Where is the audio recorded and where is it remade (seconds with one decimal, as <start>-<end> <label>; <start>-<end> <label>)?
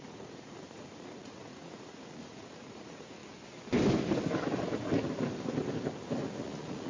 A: 0.0-3.2 remade; 3.2-6.4 recorded; 6.4-6.9 remade